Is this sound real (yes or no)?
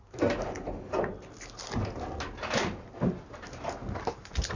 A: yes